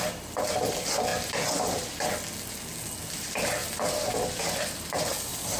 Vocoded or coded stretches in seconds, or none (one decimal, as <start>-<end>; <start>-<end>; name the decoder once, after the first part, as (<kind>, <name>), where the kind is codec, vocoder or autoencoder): 0.0-1.1 (vocoder, BigVGAN v2); 3.1-5.6